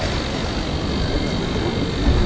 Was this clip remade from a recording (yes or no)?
no